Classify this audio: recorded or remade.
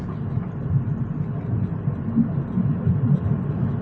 recorded